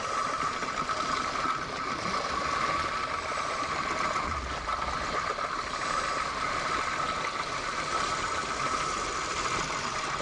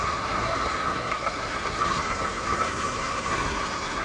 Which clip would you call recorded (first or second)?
first